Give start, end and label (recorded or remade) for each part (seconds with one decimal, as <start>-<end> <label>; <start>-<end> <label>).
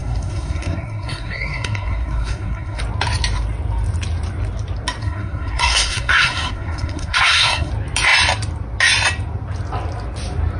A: 0.0-2.8 remade; 2.8-5.0 recorded; 5.0-7.7 remade; 7.7-10.6 recorded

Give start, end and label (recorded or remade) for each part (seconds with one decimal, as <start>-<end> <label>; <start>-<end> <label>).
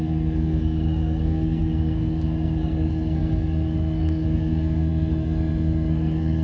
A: 0.0-6.4 remade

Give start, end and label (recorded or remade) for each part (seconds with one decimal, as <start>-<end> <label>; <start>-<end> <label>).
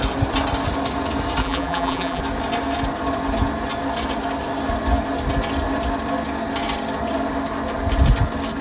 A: 0.0-1.4 recorded; 1.4-2.2 remade; 2.2-8.6 recorded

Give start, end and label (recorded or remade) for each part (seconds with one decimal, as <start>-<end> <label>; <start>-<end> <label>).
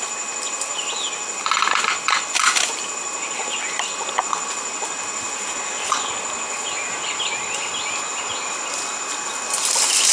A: 0.0-10.1 recorded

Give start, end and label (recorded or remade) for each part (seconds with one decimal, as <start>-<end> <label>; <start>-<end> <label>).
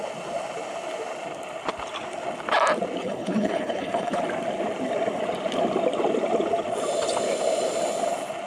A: 0.0-3.0 recorded; 3.0-4.2 remade; 4.2-8.5 recorded